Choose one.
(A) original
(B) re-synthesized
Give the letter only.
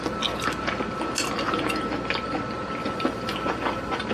A